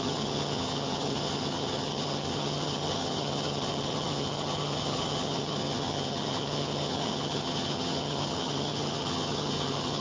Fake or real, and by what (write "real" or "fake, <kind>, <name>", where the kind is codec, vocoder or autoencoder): fake, vocoder, HiFi-GAN